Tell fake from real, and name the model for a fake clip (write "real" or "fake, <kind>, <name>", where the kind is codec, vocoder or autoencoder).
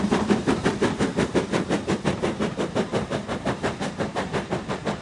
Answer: fake, vocoder, BigVGAN v2